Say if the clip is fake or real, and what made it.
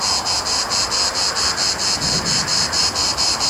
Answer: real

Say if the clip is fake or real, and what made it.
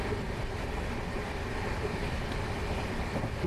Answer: real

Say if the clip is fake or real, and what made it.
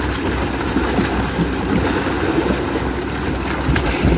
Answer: real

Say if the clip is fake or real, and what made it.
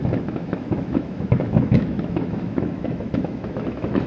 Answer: fake, autoencoder, DAC-VAE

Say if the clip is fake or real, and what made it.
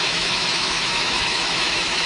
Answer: fake, autoencoder, DAC-VAE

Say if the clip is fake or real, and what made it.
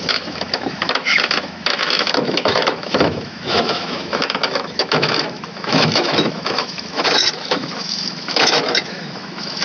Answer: fake, autoencoder, DAC-VAE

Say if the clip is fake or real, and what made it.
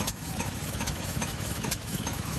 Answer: fake, autoencoder, DAC-VAE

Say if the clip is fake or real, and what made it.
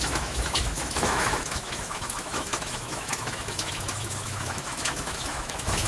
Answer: fake, autoencoder, DAC-VAE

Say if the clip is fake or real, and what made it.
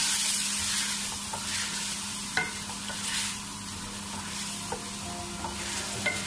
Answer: real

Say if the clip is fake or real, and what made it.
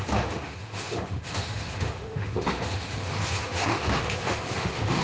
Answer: fake, autoencoder, DAC-VAE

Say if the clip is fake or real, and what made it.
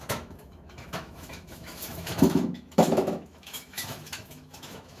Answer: fake, autoencoder, DAC-VAE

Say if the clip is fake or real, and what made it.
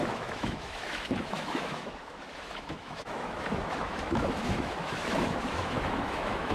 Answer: fake, autoencoder, DAC-VAE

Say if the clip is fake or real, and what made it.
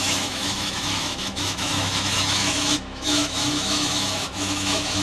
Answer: fake, autoencoder, DAC-VAE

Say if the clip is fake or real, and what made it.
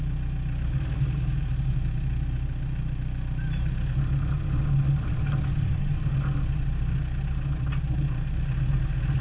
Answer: real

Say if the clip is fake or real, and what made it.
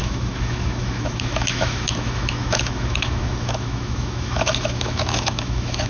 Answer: fake, autoencoder, DAC-VAE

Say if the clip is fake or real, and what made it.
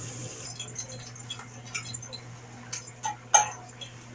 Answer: real